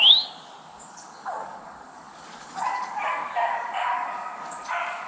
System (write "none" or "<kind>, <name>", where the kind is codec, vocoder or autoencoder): codec, DAC